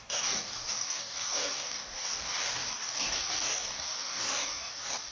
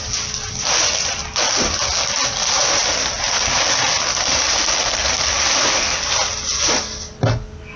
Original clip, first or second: second